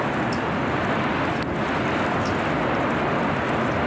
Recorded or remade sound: recorded